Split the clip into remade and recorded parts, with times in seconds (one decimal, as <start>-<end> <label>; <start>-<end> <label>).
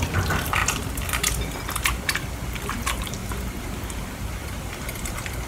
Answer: 0.0-4.4 recorded; 4.4-5.5 remade